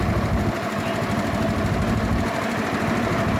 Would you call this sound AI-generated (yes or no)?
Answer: no